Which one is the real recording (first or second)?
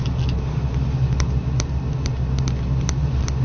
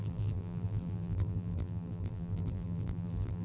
first